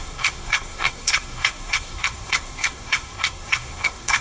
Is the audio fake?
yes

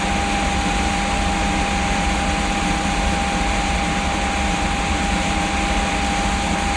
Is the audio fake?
no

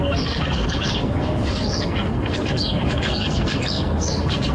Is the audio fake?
yes